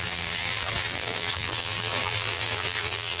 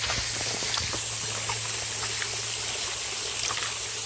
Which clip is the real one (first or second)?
second